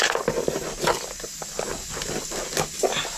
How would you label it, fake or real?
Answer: real